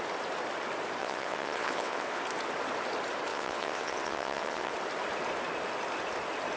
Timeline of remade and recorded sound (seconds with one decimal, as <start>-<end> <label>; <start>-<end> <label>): 0.0-1.0 recorded; 1.0-2.2 remade; 2.2-3.3 recorded; 3.3-4.7 remade; 4.7-6.6 recorded